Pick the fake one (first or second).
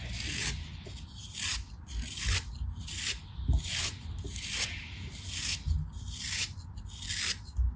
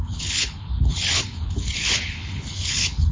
second